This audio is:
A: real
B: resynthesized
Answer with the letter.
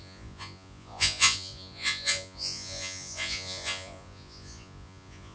B